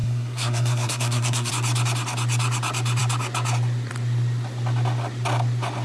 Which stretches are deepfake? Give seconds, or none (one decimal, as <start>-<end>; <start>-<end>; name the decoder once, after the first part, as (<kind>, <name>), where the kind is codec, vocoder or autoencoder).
0.0-1.5 (codec, SNAC)